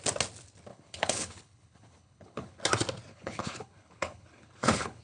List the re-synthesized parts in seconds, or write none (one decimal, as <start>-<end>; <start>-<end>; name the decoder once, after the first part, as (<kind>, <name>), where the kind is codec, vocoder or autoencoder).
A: 0.7-2.6 (codec, HILCodec); 3.1-5.0

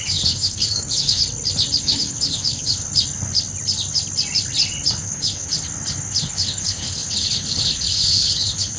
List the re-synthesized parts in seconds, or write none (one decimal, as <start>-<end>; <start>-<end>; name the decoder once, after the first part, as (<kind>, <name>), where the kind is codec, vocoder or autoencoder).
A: 0.0-1.2 (codec, HILCodec); 1.8-2.9; 5.0-5.5; 6.2-8.8